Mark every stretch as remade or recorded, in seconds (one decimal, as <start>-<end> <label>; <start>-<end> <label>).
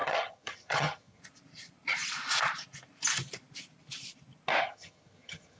0.0-1.2 remade; 1.2-4.6 recorded; 4.6-5.6 remade